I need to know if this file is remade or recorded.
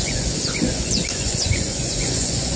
remade